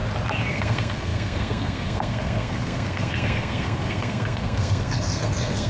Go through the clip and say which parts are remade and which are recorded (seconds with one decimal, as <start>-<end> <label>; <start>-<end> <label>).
0.0-0.5 recorded; 0.5-5.7 remade